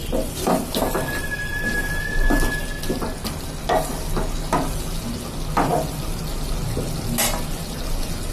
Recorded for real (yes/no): yes